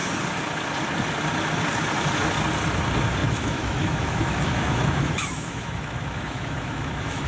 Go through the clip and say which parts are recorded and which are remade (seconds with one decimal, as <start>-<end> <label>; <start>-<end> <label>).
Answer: 0.0-3.2 recorded; 3.2-7.3 remade

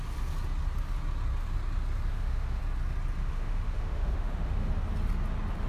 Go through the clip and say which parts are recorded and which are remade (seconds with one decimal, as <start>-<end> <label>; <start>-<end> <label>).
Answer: 0.0-2.1 recorded; 2.1-2.6 remade; 2.6-3.2 recorded; 3.2-4.7 remade; 4.7-5.7 recorded

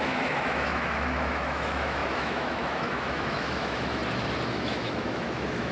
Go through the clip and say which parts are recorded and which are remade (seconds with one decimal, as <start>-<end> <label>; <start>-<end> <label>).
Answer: 0.0-4.0 remade; 4.0-4.5 recorded; 4.5-5.7 remade

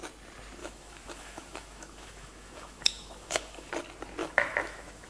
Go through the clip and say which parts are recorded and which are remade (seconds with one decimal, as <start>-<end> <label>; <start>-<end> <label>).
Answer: 0.0-0.6 recorded; 0.6-3.7 remade; 3.7-4.2 recorded; 4.2-5.1 remade

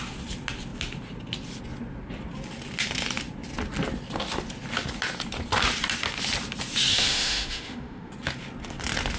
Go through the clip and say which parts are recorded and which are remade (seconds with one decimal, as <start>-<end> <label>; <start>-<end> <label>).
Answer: 0.0-6.9 recorded; 6.9-8.1 remade; 8.1-9.2 recorded

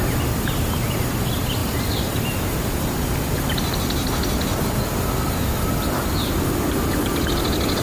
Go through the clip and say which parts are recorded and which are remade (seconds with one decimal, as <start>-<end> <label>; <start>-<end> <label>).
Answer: 0.0-7.8 recorded